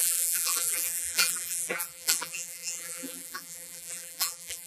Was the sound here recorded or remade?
remade